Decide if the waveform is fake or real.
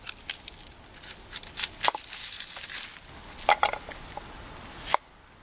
real